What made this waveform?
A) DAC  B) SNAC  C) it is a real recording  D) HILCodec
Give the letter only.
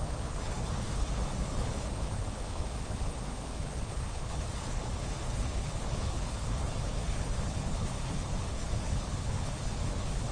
D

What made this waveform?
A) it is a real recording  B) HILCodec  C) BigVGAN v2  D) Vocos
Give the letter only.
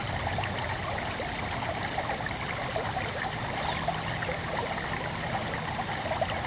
A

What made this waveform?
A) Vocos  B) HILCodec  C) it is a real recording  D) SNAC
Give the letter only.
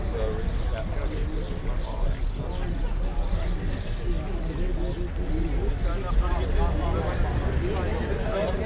C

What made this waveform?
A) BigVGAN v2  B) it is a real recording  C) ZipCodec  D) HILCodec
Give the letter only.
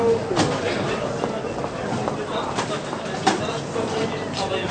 B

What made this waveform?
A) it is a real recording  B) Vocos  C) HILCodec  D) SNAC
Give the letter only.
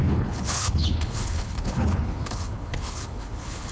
C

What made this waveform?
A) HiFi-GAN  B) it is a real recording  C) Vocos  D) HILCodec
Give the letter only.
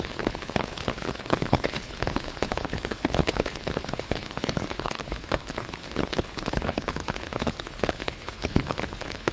D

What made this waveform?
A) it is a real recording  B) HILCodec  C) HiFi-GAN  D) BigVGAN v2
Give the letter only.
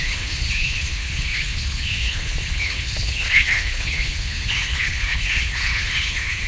B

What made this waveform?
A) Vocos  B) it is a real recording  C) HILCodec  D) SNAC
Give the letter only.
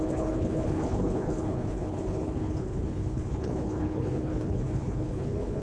C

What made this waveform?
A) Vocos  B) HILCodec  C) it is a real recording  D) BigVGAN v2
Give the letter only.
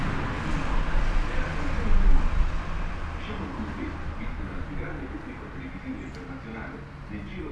C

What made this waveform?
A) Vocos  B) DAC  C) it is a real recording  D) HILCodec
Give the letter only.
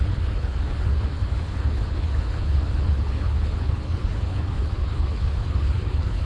D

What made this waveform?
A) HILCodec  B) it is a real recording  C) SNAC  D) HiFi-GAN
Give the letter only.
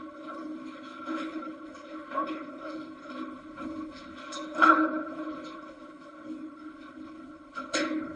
A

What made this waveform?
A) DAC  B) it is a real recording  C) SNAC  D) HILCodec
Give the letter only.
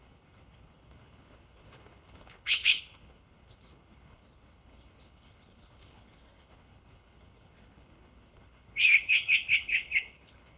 D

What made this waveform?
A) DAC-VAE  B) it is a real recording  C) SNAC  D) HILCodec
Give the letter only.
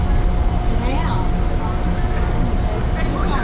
B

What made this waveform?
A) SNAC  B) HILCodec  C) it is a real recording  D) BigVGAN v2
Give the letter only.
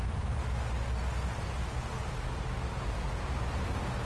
C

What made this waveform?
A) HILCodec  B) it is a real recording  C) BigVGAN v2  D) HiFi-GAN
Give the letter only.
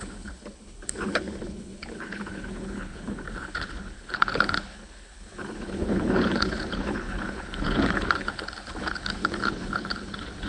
A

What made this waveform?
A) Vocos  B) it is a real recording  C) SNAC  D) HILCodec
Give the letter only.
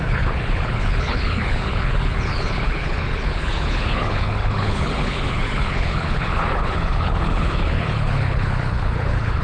D